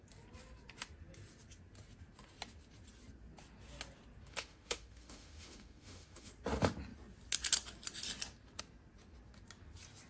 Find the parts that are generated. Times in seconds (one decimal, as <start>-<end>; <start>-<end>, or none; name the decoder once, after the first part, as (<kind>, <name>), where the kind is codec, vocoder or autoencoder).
4.3-6.3 (autoencoder, DAC-VAE)